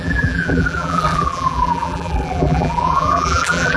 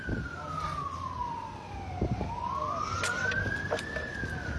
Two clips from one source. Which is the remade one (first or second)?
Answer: first